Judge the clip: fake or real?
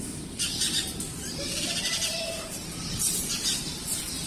fake